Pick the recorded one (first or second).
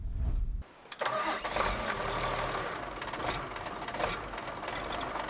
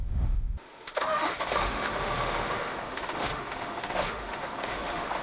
first